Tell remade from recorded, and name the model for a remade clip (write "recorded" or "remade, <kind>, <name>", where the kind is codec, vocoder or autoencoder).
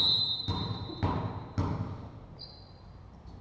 recorded